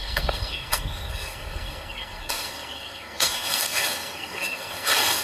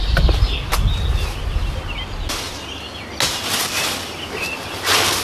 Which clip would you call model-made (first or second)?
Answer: first